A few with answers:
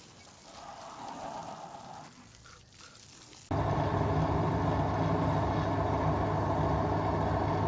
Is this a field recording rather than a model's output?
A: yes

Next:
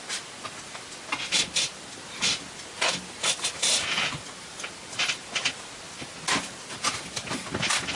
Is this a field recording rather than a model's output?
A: yes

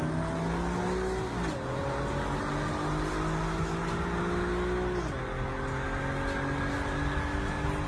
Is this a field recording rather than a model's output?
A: yes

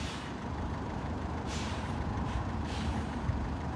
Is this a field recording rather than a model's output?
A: no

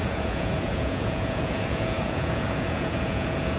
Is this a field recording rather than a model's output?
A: no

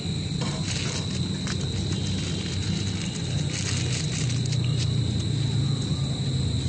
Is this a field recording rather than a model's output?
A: yes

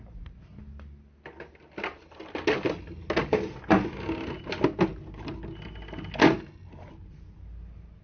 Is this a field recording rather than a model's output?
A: yes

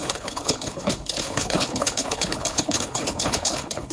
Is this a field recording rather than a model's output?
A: no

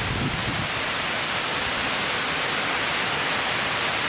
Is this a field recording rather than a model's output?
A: yes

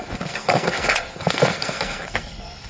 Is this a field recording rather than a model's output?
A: no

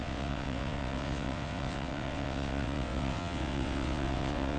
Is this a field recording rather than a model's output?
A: no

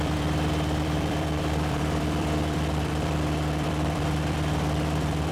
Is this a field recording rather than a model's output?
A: no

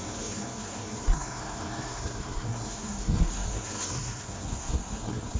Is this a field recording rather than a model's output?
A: no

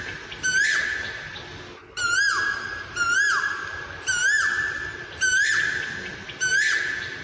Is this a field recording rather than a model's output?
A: yes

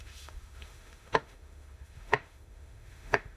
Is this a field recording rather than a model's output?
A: no